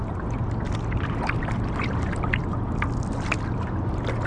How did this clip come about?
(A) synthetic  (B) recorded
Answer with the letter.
B